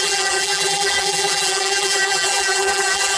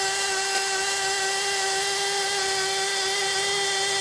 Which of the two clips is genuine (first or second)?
second